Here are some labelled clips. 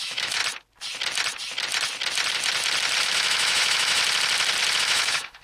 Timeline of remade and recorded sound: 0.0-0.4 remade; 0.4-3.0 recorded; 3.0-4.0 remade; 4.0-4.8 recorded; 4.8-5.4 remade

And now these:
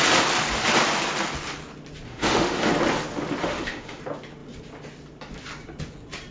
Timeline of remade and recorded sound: 0.0-2.1 recorded; 2.1-2.7 remade; 2.7-3.4 recorded; 3.4-4.0 remade; 4.0-6.3 recorded

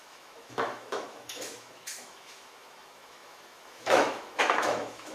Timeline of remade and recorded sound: 0.0-5.1 remade

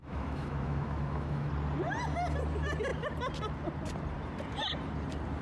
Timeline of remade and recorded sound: 0.0-1.5 remade; 1.5-5.4 recorded

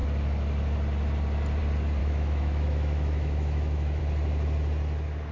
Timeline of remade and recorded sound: 0.0-2.0 recorded; 2.0-4.0 remade; 4.0-5.3 recorded

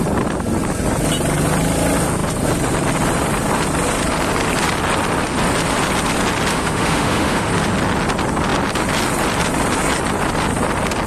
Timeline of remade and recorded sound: 0.0-6.5 recorded; 6.5-7.5 remade; 7.5-11.1 recorded

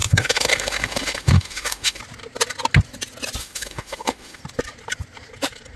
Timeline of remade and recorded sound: 0.0-2.0 remade; 2.0-3.4 recorded; 3.4-4.4 remade; 4.4-5.8 recorded